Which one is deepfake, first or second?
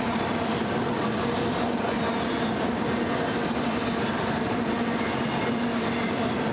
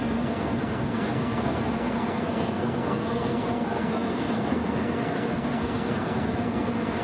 second